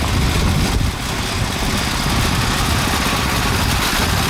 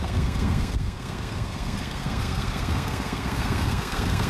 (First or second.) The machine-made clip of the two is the second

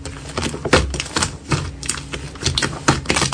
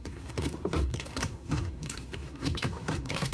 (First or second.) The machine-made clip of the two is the second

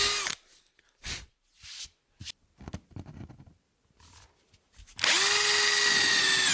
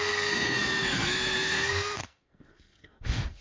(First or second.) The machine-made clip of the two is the second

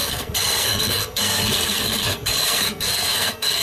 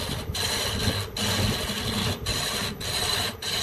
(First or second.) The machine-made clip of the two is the first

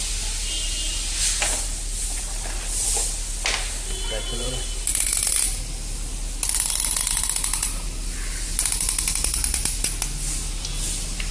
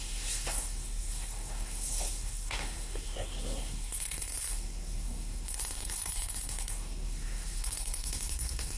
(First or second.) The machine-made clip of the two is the second